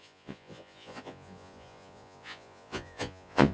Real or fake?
fake